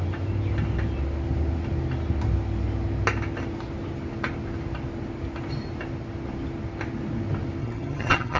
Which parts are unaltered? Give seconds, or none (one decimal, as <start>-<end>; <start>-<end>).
0.0-7.6